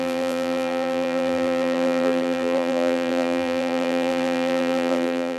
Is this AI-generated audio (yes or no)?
yes